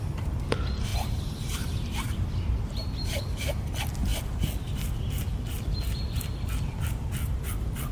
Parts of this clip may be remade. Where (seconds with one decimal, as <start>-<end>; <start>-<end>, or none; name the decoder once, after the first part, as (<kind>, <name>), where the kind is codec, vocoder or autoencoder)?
0.9-3.2 (vocoder, BigVGAN v2)